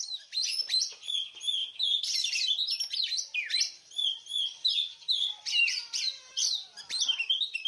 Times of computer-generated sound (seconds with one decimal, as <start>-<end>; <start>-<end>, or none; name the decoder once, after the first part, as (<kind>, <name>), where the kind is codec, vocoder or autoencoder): 0.0-7.7 (vocoder, BigVGAN v2)